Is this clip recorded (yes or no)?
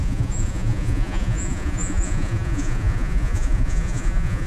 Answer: no